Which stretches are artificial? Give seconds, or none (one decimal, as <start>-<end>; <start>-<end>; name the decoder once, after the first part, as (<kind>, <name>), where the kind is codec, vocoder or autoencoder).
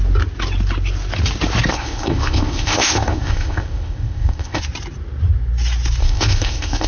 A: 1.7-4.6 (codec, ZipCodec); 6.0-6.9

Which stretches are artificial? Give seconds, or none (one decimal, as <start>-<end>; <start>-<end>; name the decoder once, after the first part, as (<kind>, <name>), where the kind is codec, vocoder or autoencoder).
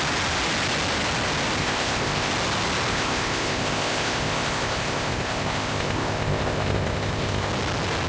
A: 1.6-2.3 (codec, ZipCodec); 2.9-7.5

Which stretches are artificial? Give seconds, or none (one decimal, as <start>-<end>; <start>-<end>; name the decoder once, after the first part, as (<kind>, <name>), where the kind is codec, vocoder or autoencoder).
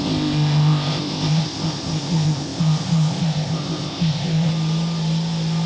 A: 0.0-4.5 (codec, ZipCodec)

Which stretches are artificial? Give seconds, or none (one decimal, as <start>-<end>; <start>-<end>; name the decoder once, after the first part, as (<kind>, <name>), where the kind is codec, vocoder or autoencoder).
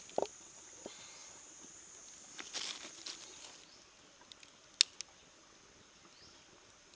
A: none